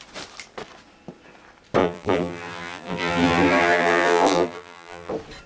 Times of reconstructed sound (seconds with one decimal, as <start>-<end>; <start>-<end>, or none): 1.8-5.1